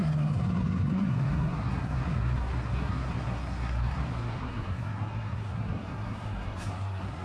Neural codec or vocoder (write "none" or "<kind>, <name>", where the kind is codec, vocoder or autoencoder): codec, SNAC